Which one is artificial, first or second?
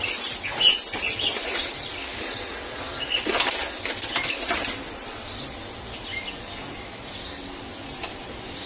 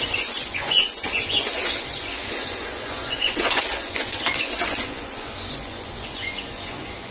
second